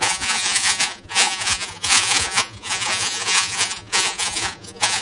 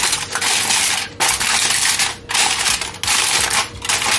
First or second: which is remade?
first